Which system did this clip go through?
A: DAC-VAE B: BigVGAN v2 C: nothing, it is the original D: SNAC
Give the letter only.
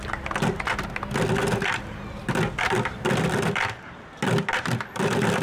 C